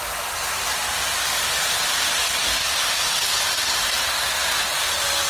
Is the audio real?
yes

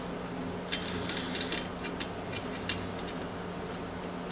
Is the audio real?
yes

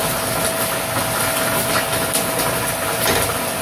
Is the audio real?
yes